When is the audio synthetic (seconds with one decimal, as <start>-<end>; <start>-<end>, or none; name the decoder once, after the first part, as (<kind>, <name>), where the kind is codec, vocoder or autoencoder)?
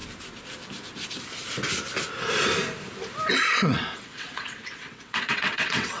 3.3-6.0 (vocoder, WaveNeXt)